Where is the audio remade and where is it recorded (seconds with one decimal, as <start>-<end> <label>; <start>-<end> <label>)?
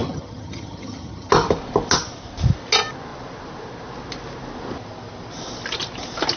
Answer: 0.0-1.3 remade; 1.3-6.4 recorded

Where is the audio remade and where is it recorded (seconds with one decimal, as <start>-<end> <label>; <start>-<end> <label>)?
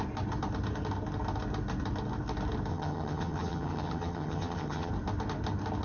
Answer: 0.0-2.7 recorded; 2.7-4.9 remade; 4.9-5.8 recorded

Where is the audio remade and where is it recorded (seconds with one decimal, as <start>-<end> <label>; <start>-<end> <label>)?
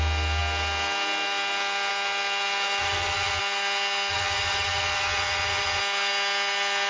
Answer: 0.0-2.8 recorded; 2.8-3.4 remade; 3.4-4.1 recorded; 4.1-5.8 remade; 5.8-6.9 recorded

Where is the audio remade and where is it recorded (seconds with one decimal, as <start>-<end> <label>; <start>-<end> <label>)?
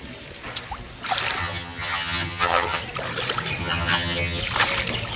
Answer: 0.0-1.4 recorded; 1.4-2.8 remade; 2.8-3.6 recorded; 3.6-4.4 remade; 4.4-5.2 recorded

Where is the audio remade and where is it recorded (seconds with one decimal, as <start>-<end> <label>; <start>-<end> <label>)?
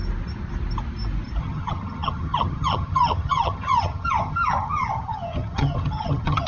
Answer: 0.0-1.4 recorded; 1.4-6.5 remade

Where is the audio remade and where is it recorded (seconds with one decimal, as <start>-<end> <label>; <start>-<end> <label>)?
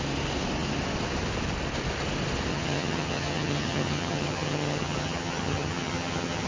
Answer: 0.0-2.5 recorded; 2.5-6.5 remade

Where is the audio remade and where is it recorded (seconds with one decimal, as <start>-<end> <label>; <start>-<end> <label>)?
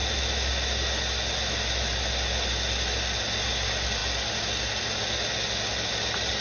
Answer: 0.0-6.4 recorded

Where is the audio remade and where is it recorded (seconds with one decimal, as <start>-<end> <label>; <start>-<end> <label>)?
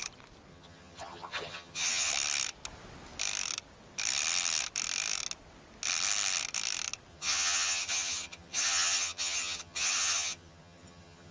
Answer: 0.0-0.5 recorded; 0.5-2.1 remade; 2.1-7.1 recorded; 7.1-11.3 remade